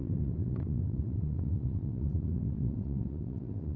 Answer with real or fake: fake